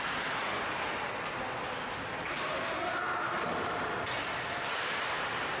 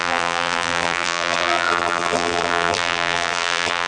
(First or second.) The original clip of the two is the first